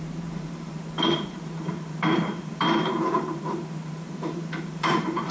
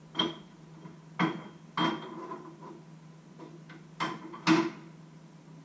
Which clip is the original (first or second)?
second